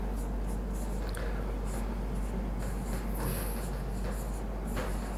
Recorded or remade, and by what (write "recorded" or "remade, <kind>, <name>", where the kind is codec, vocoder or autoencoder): recorded